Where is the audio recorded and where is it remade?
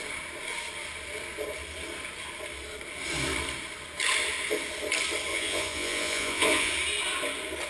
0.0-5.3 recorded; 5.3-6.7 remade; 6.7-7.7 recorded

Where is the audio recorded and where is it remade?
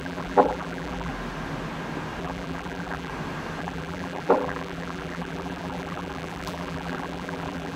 0.0-1.1 remade; 1.1-2.2 recorded; 2.2-3.1 remade; 3.1-3.6 recorded; 3.6-7.8 remade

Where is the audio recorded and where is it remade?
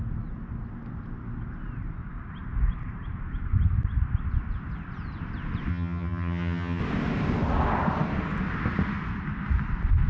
0.0-5.7 recorded; 5.7-6.8 remade; 6.8-10.1 recorded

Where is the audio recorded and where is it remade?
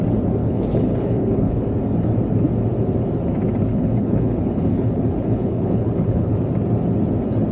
0.0-0.4 recorded; 0.4-1.7 remade; 1.7-3.7 recorded; 3.7-6.3 remade; 6.3-7.5 recorded